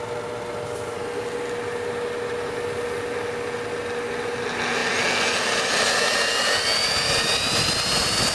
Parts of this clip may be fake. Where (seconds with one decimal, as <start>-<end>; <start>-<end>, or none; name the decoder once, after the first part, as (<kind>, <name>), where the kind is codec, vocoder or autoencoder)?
none